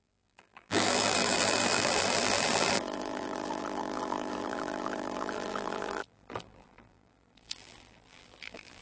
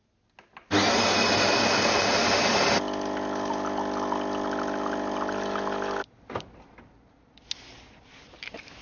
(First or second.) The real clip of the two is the second